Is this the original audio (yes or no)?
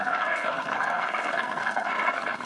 no